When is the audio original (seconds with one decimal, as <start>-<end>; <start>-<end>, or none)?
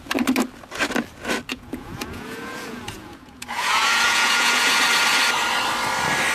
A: 0.0-1.5; 4.8-6.3